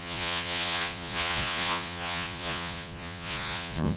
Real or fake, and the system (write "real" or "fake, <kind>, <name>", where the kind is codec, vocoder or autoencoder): fake, vocoder, Vocos